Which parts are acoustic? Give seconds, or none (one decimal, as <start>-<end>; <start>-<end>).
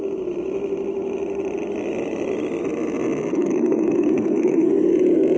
0.0-3.3; 4.7-5.4